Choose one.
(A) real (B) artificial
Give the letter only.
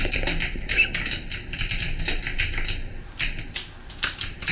A